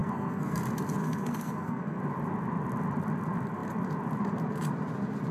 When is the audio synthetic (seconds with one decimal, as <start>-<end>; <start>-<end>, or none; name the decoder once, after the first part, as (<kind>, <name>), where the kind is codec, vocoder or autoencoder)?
0.0-0.6 (codec, SNAC); 1.0-2.0